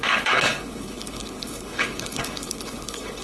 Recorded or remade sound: remade